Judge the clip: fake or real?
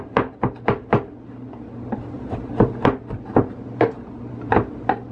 real